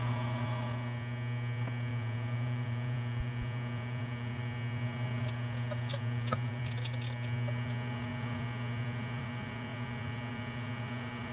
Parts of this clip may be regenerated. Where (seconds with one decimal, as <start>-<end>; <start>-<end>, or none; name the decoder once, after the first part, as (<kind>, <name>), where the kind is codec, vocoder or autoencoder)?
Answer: 1.9-4.4 (vocoder, Vocos); 5.9-6.6